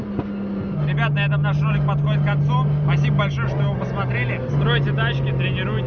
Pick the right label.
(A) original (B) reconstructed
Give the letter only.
A